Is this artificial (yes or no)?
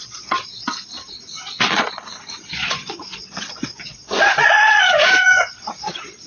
yes